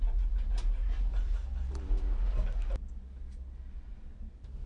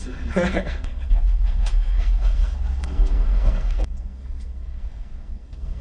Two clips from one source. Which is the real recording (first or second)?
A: first